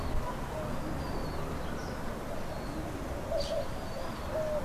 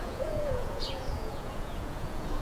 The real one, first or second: first